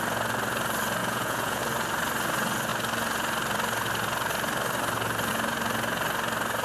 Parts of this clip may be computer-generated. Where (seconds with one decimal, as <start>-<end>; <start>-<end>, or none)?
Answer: 1.0-1.6